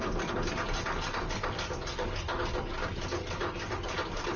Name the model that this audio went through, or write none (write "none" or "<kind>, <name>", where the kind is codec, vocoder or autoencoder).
none